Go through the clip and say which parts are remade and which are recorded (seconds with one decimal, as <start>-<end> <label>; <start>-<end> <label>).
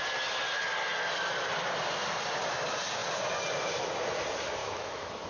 0.0-4.6 recorded; 4.6-5.3 remade